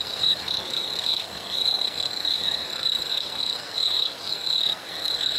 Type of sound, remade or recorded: remade